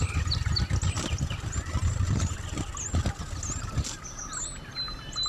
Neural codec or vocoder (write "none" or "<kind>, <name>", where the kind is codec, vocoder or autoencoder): none